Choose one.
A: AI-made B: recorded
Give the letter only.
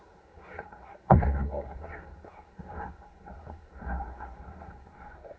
A